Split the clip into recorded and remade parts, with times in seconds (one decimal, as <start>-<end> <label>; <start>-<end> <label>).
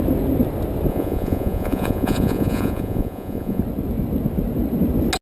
0.0-0.9 recorded; 0.9-3.6 remade; 3.6-5.2 recorded